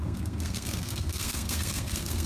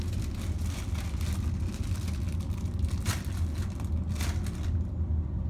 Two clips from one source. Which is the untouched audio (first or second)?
second